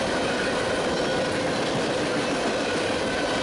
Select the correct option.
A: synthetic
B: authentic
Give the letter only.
B